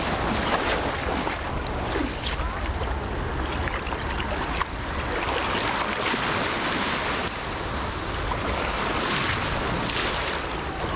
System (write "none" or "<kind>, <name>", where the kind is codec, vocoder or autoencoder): none